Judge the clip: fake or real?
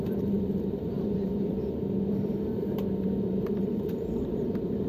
fake